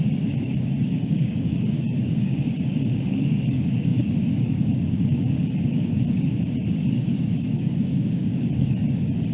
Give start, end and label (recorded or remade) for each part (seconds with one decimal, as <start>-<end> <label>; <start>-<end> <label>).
0.0-9.3 remade